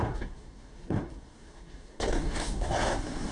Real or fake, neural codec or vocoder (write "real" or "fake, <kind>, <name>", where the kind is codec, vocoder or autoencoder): fake, codec, SNAC